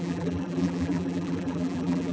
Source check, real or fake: fake